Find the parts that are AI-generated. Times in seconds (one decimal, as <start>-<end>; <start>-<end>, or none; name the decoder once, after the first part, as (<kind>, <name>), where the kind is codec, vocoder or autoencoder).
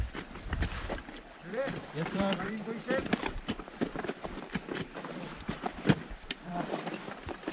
0.0-7.5 (vocoder, BigVGAN v2)